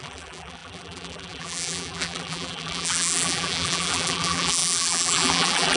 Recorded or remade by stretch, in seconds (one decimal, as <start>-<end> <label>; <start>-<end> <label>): 0.0-5.8 remade